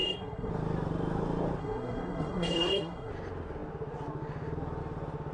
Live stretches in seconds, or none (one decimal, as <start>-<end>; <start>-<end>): 0.5-1.6; 3.1-5.3